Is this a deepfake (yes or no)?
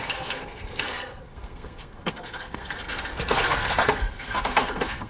yes